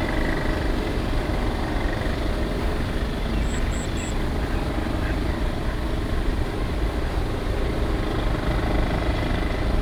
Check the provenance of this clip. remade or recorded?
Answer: recorded